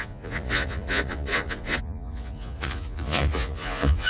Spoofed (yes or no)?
yes